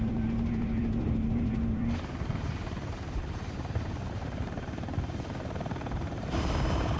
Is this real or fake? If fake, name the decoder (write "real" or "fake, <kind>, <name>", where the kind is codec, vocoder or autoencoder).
fake, vocoder, BigVGAN v2